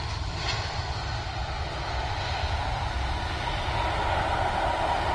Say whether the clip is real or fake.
real